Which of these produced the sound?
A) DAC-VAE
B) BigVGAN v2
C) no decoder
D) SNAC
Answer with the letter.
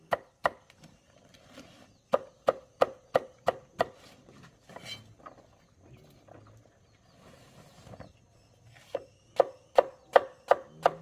C